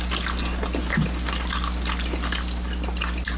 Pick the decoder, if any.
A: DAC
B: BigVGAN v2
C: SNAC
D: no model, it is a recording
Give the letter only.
D